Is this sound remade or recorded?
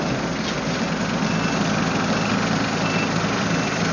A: recorded